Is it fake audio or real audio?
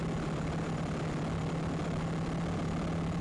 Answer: real